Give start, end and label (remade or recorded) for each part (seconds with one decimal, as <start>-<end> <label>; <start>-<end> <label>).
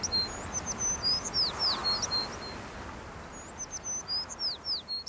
0.0-5.1 recorded